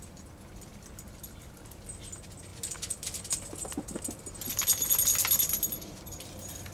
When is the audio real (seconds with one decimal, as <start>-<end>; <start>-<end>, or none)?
0.0-6.7